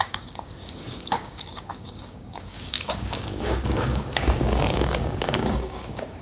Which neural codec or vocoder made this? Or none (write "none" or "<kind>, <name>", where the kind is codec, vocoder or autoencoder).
codec, DAC